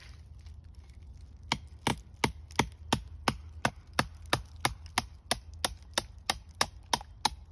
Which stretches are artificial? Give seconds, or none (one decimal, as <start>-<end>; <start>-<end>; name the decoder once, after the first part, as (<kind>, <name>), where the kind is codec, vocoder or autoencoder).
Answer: none